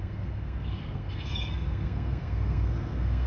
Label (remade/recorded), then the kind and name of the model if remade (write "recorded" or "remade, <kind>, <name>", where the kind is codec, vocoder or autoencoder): remade, codec, SNAC